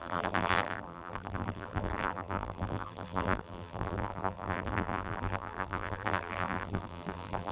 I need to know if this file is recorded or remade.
remade